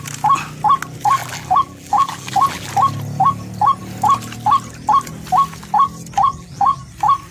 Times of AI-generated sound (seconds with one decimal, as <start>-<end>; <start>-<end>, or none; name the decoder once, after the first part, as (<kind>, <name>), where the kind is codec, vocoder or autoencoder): 1.2-2.7 (vocoder, BigVGAN v2); 6.2-6.8